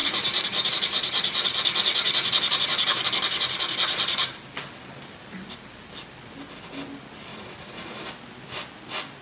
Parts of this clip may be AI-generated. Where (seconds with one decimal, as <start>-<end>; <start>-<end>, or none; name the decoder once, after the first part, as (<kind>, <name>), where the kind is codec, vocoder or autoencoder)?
0.0-0.7 (vocoder, BigVGAN v2); 7.3-8.3